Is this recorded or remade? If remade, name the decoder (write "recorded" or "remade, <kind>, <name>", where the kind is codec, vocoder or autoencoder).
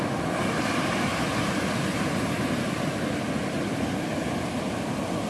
recorded